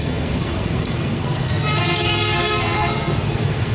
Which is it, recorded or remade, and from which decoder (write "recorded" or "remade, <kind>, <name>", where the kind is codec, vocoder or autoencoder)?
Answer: remade, codec, SNAC